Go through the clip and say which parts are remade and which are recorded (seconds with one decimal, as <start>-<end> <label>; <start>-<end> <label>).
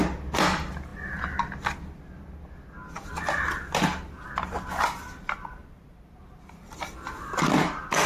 0.0-8.1 recorded